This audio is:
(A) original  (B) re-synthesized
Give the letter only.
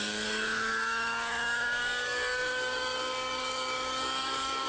B